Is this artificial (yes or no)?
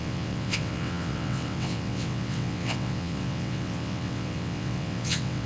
yes